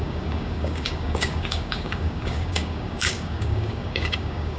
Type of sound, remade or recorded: remade